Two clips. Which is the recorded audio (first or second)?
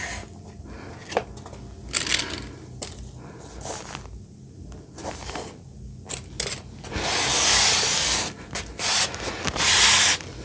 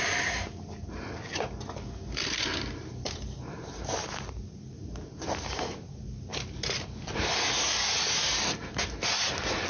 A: first